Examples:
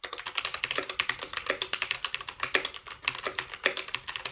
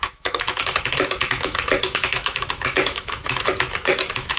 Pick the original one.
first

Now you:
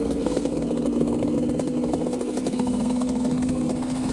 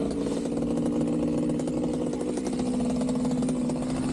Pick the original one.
second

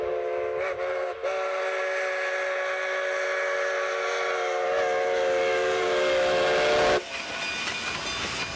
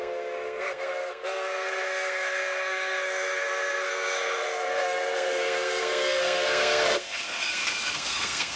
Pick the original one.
first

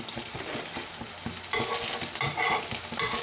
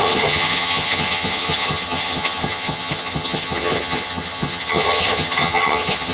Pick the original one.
first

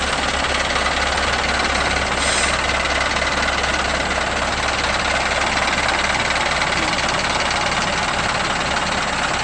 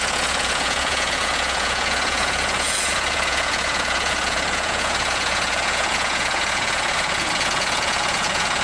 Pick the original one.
first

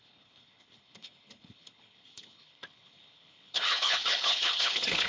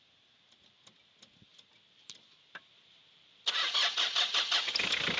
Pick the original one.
second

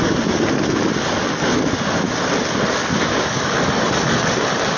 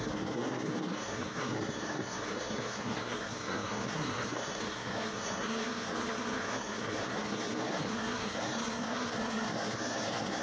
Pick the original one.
first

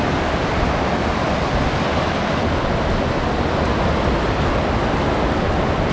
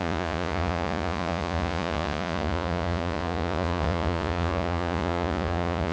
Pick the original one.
first